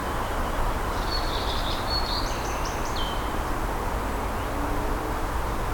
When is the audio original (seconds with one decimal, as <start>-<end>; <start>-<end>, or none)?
3.4-5.7